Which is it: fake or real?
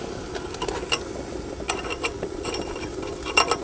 real